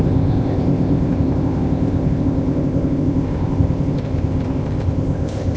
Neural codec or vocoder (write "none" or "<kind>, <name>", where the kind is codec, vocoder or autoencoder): codec, ZipCodec